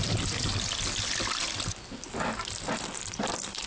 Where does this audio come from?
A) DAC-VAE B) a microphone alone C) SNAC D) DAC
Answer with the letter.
B